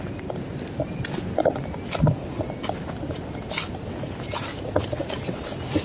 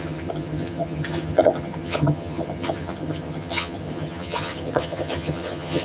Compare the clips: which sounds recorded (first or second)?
first